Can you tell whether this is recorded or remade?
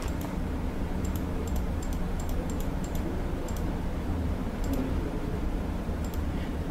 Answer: remade